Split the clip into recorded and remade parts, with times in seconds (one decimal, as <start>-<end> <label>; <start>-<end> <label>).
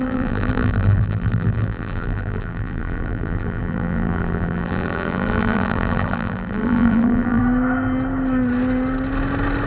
0.0-7.4 remade; 7.4-9.7 recorded